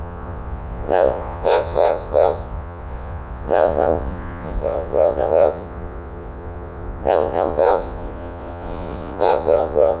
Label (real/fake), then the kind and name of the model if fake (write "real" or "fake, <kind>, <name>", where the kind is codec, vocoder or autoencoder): fake, vocoder, Vocos